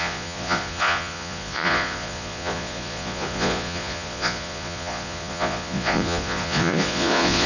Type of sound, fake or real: fake